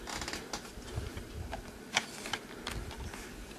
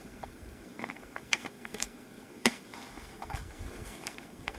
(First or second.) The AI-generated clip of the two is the second